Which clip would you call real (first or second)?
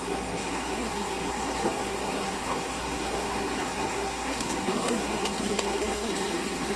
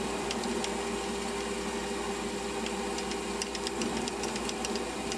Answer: second